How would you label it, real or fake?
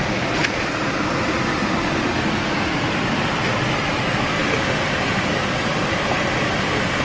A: real